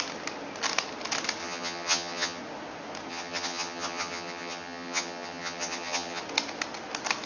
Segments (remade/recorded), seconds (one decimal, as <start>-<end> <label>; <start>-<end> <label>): 0.0-1.4 recorded; 1.4-2.4 remade; 2.4-3.1 recorded; 3.1-6.2 remade; 6.2-7.3 recorded

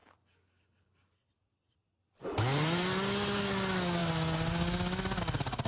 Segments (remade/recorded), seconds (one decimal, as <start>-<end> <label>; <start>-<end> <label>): 0.0-5.7 recorded

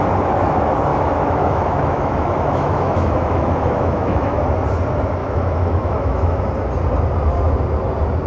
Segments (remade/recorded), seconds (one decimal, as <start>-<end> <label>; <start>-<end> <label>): 0.0-0.9 recorded; 0.9-4.4 remade; 4.4-5.2 recorded; 5.2-6.4 remade; 6.4-8.3 recorded

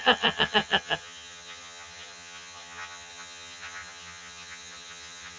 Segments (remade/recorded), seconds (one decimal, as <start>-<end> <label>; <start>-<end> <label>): 0.0-5.4 remade

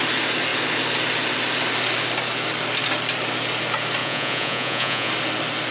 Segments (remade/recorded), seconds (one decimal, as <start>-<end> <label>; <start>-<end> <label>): 0.0-4.0 recorded; 4.0-5.1 remade; 5.1-5.7 recorded

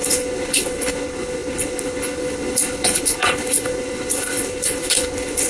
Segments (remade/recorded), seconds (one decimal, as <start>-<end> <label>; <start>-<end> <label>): 0.0-5.5 remade

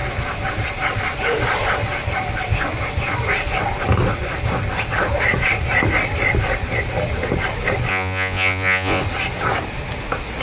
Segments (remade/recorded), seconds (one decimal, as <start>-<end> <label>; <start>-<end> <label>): 0.0-7.9 recorded; 7.9-9.0 remade; 9.0-10.4 recorded